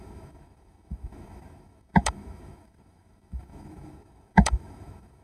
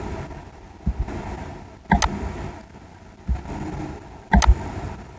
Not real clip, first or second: first